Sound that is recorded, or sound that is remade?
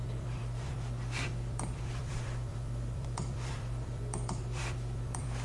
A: remade